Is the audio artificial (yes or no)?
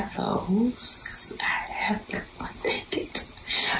no